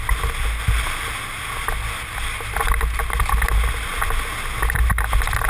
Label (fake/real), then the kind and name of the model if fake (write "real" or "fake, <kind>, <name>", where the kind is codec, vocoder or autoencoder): real